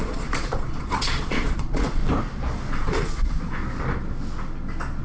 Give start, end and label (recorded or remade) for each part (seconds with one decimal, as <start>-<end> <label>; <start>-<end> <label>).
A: 0.0-2.0 remade; 2.0-2.7 recorded; 2.7-3.6 remade; 3.6-5.0 recorded